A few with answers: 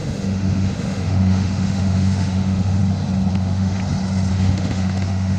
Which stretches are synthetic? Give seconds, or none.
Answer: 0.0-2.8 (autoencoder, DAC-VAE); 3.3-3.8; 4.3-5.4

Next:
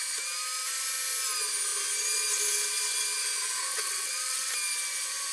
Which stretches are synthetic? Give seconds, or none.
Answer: 3.7-4.5 (vocoder, WaveNeXt)

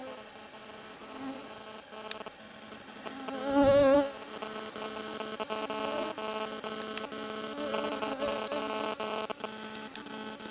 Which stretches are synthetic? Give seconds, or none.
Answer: none

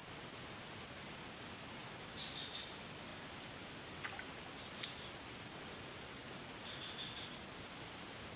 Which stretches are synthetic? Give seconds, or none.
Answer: none

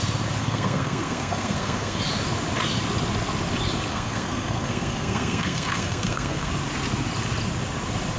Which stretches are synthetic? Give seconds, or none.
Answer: 0.4-2.0 (codec, SNAC); 3.9-6.5

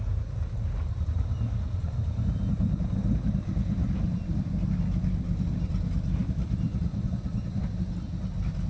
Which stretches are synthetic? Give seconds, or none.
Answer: none

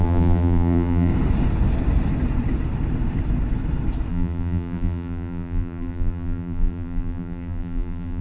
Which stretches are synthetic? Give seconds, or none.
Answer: 0.0-1.1 (vocoder, BigVGAN v2); 4.1-8.2

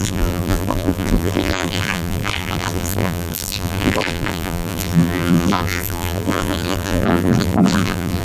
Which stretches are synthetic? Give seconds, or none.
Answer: 0.0-8.2 (vocoder, BigVGAN v2)